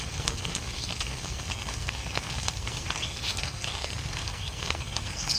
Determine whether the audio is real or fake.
fake